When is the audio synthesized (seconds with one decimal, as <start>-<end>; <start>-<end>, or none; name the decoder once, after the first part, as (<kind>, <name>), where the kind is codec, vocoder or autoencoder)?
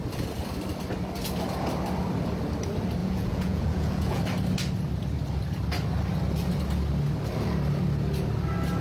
3.0-4.2 (vocoder, Vocos)